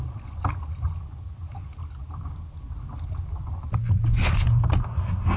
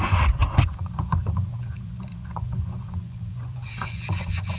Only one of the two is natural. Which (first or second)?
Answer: first